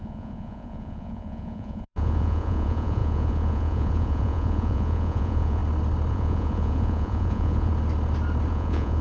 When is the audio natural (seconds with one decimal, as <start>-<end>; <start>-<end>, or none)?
5.6-6.1; 7.7-8.5